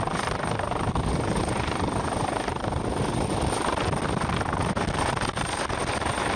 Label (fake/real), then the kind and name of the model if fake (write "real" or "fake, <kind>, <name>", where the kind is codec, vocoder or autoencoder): real